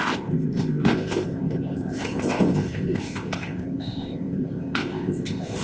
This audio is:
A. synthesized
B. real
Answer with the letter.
A